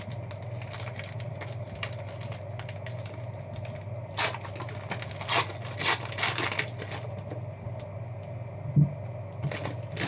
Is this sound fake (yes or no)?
no